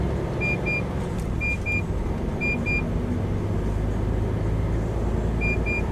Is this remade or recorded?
recorded